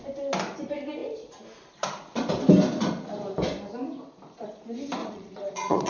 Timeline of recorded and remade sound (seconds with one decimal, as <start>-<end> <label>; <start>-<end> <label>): 0.0-5.0 recorded; 5.0-5.9 remade